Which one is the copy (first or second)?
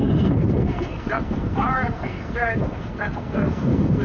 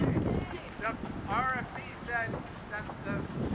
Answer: first